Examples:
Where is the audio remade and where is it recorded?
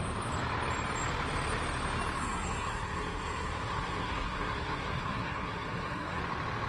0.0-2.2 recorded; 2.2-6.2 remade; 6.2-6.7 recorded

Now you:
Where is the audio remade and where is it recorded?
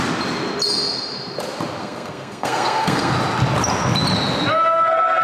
0.0-1.8 recorded; 1.8-3.1 remade; 3.1-5.2 recorded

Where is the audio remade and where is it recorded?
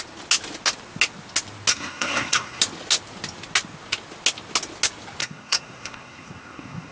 0.0-1.7 recorded; 1.7-2.6 remade; 2.6-5.2 recorded; 5.2-6.9 remade